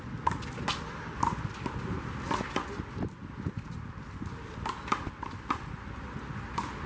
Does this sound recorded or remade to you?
recorded